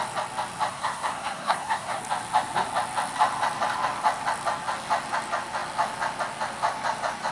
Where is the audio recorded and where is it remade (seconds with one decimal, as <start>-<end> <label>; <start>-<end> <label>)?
0.0-0.7 recorded; 0.7-2.0 remade; 2.0-7.3 recorded